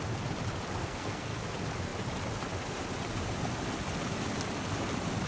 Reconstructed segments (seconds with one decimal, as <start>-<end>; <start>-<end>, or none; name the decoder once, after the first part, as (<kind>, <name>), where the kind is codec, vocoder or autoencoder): 0.8-1.4 (codec, SNAC)